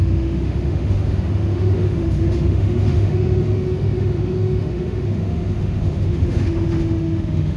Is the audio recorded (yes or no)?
no